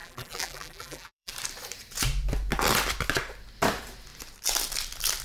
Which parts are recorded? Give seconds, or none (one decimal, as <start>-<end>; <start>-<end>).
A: 1.3-5.2

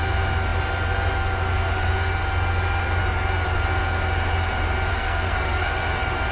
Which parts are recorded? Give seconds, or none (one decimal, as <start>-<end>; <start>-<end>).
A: 0.0-4.9; 5.7-6.3

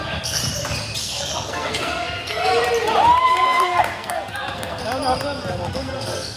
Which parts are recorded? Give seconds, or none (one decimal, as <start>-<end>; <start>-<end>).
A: 0.4-1.0; 2.5-3.2; 4.8-5.5